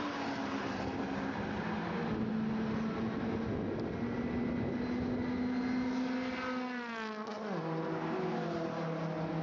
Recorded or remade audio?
recorded